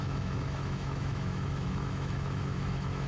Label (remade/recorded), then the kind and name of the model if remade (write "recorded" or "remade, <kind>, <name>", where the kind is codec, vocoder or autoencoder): remade, autoencoder, DAC-VAE